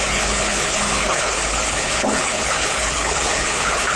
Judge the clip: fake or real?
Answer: fake